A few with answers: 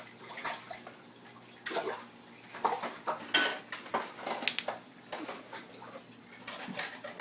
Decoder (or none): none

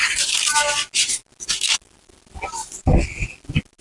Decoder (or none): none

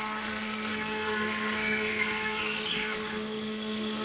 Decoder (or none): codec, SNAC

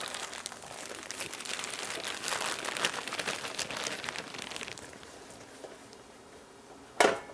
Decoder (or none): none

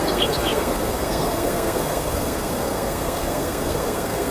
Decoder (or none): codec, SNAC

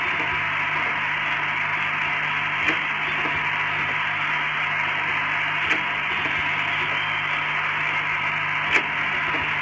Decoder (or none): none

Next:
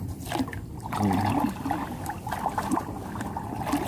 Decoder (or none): none